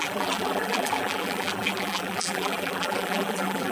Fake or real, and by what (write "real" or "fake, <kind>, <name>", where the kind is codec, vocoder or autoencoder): fake, vocoder, BigVGAN v2